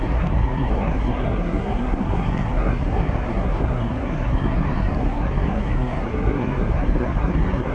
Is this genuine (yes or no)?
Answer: no